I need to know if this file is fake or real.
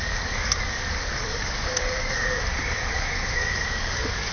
fake